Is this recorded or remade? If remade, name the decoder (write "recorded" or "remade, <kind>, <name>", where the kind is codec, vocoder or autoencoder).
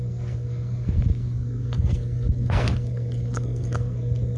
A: remade, codec, SNAC